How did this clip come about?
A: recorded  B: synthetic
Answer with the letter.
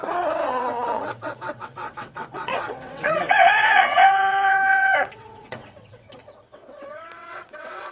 B